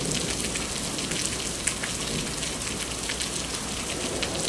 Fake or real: real